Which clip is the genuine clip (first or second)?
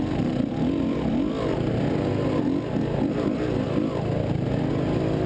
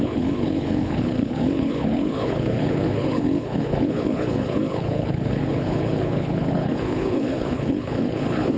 first